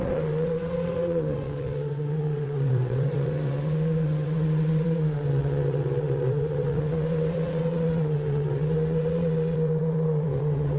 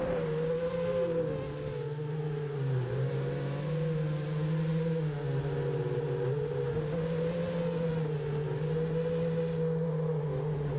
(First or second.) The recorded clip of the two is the second